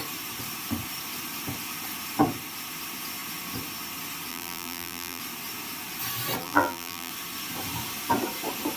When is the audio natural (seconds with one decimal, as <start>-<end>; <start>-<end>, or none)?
0.0-4.3; 5.2-6.4; 7.1-8.8